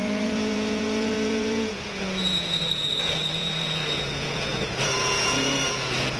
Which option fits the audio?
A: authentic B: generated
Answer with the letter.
B